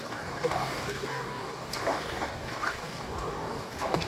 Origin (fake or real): fake